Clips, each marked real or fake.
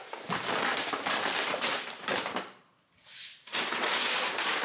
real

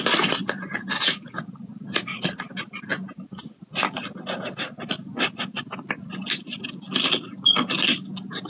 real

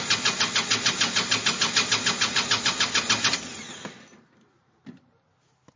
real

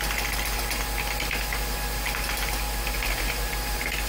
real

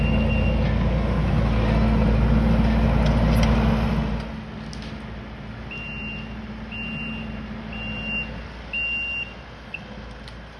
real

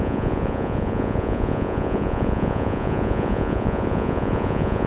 fake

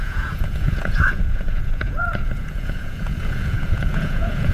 fake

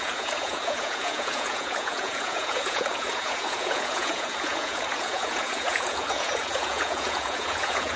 fake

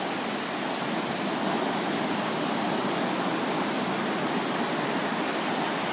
real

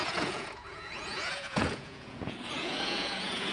fake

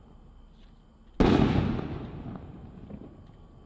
real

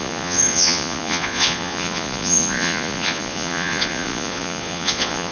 fake